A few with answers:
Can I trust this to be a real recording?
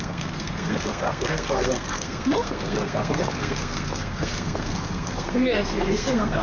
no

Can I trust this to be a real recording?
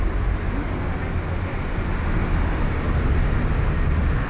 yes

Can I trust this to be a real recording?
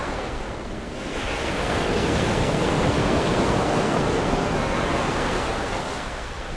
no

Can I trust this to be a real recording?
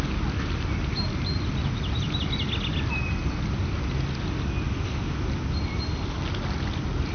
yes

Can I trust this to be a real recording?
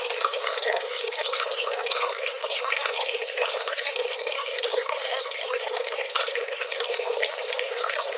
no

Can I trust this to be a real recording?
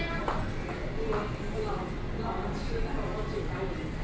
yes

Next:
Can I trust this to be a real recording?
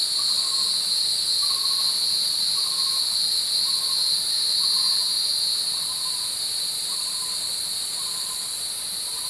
yes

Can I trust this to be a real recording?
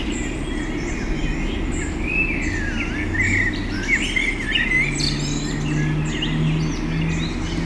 yes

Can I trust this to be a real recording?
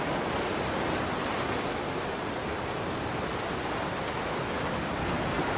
yes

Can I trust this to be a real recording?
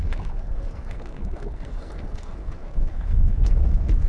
no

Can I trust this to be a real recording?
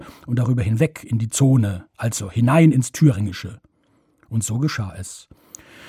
yes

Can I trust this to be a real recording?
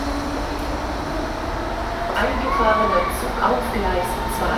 yes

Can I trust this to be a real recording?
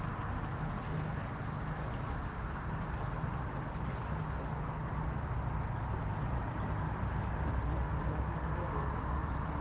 yes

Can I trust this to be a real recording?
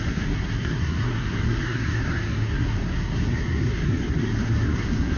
no